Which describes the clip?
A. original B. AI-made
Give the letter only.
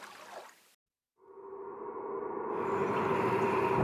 A